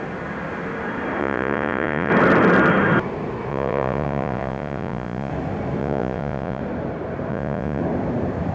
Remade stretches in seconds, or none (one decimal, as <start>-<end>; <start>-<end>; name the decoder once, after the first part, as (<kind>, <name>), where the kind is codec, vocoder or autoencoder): 1.2-2.1 (vocoder, Vocos); 3.5-5.3; 5.8-6.6; 7.3-7.8